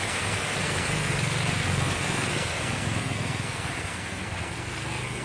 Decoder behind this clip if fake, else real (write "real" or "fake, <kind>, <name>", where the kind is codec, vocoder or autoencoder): fake, codec, SNAC